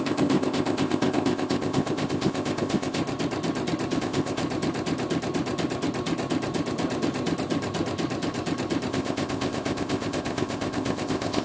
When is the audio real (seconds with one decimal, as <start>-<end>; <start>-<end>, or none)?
3.0-4.0; 4.4-8.9